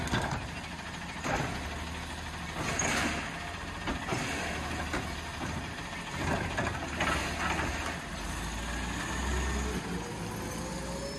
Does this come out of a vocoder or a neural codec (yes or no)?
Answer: no